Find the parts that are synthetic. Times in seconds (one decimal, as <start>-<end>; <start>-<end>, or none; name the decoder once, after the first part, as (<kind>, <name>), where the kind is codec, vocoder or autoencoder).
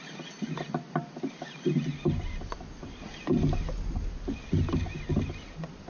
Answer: none